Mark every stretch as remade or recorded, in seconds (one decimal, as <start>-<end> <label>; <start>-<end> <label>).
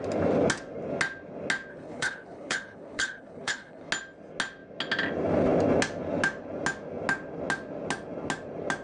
0.0-1.7 recorded; 1.7-3.9 remade; 3.9-8.8 recorded